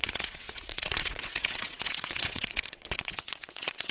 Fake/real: fake